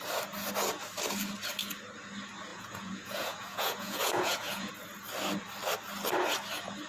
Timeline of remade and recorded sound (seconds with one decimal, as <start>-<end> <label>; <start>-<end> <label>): 0.0-2.5 recorded; 2.5-4.7 remade; 4.7-6.9 recorded